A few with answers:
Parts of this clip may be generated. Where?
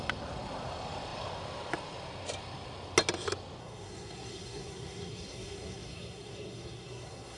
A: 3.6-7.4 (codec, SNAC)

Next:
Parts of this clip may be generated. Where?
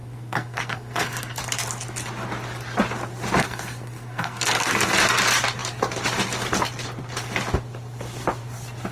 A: 0.0-1.4 (codec, SNAC); 3.4-4.7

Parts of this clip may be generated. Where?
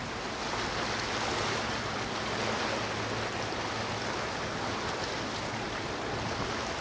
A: none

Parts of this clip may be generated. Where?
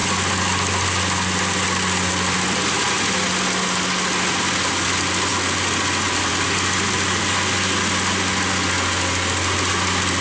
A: none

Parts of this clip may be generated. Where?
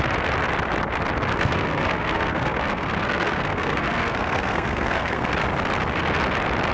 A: 1.3-5.3 (codec, SNAC)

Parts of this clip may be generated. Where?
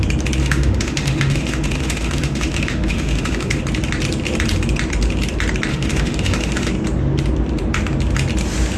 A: 0.4-3.6 (autoencoder, DAC-VAE); 5.7-6.7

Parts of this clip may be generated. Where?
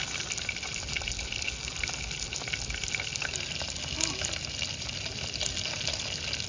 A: none